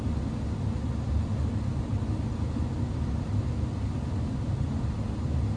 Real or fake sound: real